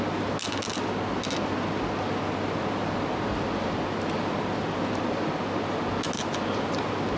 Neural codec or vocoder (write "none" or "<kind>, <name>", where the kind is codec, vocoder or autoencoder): none